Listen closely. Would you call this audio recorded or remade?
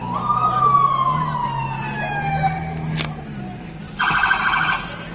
recorded